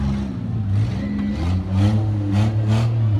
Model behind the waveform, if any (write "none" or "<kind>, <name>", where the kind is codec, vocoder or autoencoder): none